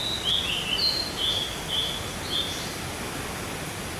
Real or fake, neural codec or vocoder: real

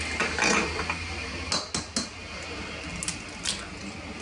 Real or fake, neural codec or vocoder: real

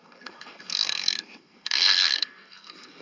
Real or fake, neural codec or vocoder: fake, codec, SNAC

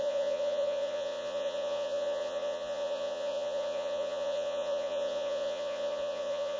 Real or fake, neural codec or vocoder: fake, vocoder, Vocos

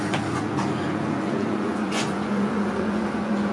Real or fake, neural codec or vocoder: fake, vocoder, Vocos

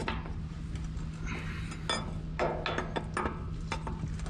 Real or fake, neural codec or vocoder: real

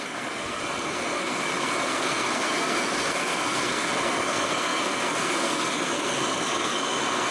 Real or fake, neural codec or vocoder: fake, codec, SNAC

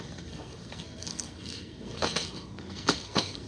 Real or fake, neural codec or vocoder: fake, codec, SNAC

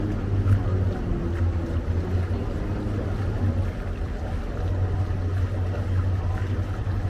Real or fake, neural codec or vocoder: real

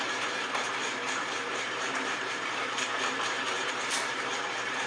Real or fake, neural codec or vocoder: fake, vocoder, BigVGAN v2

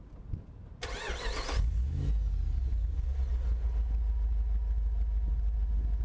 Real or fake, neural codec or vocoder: real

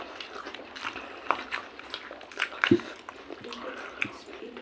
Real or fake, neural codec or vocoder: real